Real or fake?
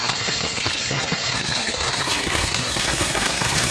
fake